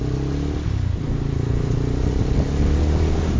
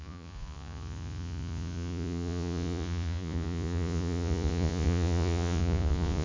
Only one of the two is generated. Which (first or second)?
second